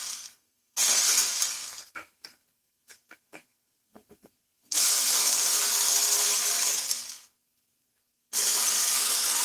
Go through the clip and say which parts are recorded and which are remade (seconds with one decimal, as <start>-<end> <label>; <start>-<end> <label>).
0.0-9.4 remade